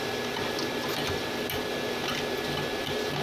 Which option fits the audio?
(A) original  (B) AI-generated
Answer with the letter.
A